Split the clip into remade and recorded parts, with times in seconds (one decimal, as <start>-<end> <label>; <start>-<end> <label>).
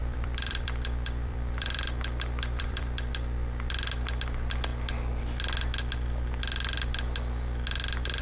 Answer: 0.0-3.1 remade; 3.1-8.2 recorded